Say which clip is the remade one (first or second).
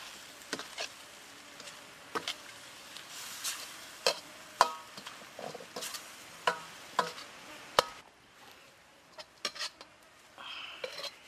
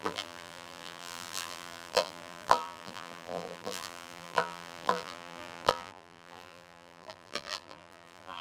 second